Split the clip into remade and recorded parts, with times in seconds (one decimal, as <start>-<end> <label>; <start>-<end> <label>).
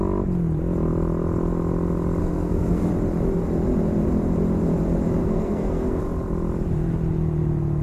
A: 0.0-2.2 recorded; 2.2-2.9 remade; 2.9-5.2 recorded; 5.2-6.0 remade; 6.0-7.8 recorded